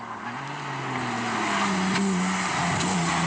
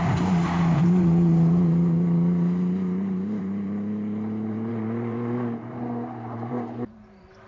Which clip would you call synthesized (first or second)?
second